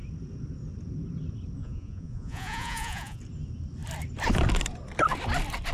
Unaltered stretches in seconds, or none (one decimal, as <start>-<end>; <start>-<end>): 0.0-1.6; 3.2-5.7